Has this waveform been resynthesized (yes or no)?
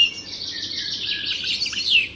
no